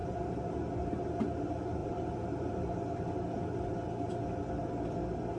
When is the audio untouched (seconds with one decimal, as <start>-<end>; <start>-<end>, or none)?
0.5-1.8; 2.5-5.4